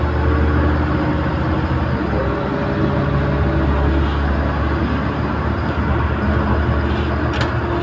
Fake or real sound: real